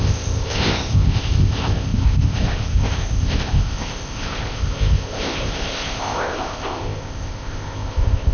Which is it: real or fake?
fake